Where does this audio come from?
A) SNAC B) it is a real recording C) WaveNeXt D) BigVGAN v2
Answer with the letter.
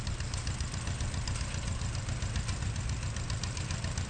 B